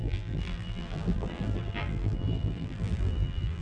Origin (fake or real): fake